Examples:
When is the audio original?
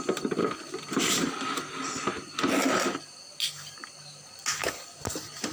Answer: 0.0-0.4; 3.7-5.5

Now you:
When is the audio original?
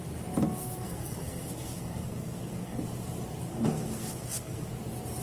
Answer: 0.0-0.6; 2.8-3.5; 4.7-5.2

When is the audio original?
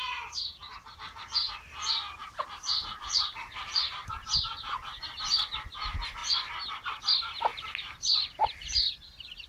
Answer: 0.0-2.2; 4.1-7.5; 8.9-9.5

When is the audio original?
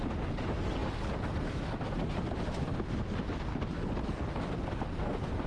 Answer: 0.0-3.5; 4.5-5.5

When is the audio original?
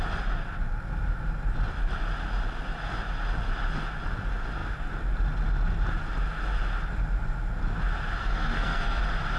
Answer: 0.0-8.2; 9.0-9.4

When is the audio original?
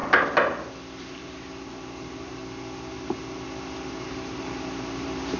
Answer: 0.0-1.0; 2.4-3.9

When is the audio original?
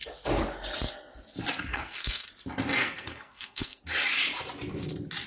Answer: 0.0-1.7; 2.3-2.8; 3.8-5.3